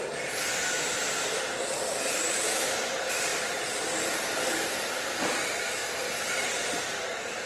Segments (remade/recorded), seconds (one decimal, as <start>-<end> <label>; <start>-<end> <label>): 0.0-5.8 remade; 5.8-6.5 recorded; 6.5-7.5 remade